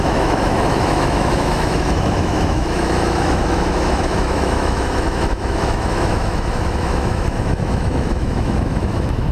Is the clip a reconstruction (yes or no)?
yes